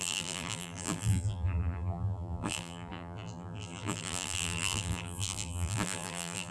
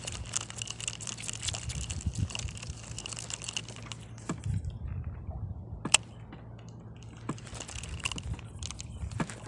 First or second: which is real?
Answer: second